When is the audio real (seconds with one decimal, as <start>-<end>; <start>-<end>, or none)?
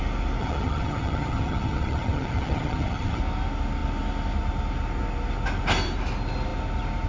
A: 0.0-0.4; 3.2-7.1